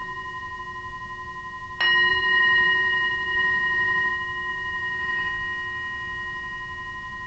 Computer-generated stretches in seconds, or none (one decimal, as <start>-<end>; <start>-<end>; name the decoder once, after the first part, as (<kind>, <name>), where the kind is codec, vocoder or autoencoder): 0.0-0.6 (vocoder, Vocos); 2.1-4.1; 4.5-5.3